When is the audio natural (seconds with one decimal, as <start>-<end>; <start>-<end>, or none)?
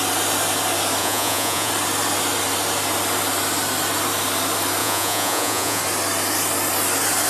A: 0.0-1.0; 1.7-4.8; 5.8-7.3